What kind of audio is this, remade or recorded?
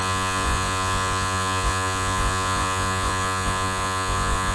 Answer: remade